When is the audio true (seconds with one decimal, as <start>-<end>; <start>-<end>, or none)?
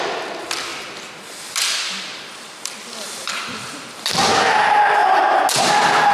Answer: 5.0-5.6